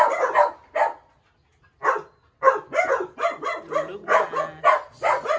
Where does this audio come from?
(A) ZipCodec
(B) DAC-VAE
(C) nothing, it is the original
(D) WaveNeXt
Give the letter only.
C